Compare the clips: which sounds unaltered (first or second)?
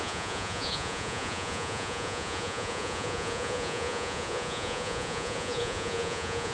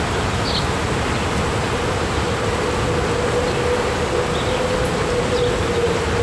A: second